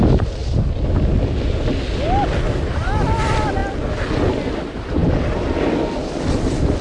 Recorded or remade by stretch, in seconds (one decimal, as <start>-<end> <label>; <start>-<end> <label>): 0.0-6.8 recorded